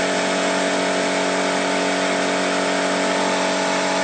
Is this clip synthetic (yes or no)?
no